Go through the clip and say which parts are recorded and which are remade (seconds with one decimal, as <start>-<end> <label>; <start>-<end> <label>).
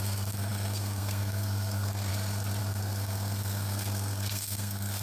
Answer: 0.0-2.1 remade; 2.1-2.6 recorded; 2.6-5.0 remade